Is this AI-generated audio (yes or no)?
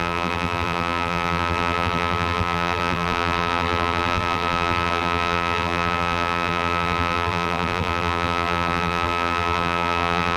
yes